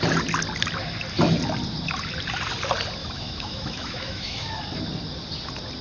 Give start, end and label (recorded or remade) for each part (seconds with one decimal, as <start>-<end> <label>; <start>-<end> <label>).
0.0-3.0 recorded; 3.0-4.6 remade; 4.6-5.8 recorded

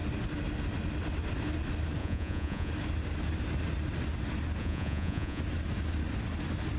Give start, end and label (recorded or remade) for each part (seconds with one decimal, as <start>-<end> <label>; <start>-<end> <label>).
0.0-2.0 recorded; 2.0-2.7 remade; 2.7-4.6 recorded; 4.6-5.4 remade; 5.4-6.8 recorded

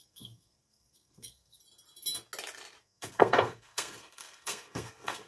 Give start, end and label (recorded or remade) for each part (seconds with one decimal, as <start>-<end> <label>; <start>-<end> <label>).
0.0-1.6 remade; 1.6-2.8 recorded; 2.8-5.3 remade

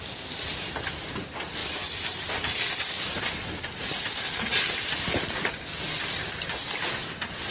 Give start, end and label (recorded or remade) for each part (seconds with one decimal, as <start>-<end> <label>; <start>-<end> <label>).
0.0-7.5 recorded

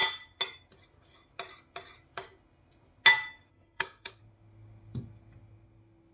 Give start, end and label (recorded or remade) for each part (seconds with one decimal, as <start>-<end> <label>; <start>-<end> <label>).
0.0-3.5 recorded; 3.5-4.2 remade; 4.2-6.1 recorded

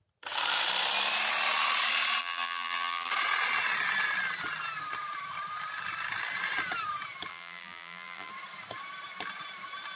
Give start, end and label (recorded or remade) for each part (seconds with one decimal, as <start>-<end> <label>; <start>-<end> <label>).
0.0-2.2 recorded; 2.2-3.1 remade; 3.1-7.3 recorded; 7.3-8.3 remade; 8.3-10.0 recorded

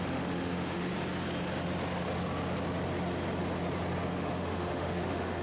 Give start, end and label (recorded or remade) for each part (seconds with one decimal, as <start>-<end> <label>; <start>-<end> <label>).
0.0-0.9 remade; 0.9-4.1 recorded; 4.1-5.4 remade